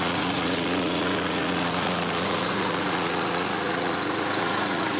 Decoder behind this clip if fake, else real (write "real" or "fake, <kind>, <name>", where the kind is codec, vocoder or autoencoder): fake, vocoder, Vocos